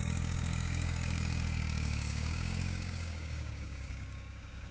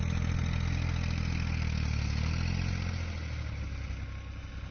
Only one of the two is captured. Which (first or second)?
second